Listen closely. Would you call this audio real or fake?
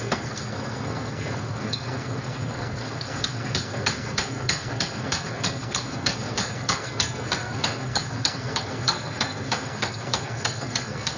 fake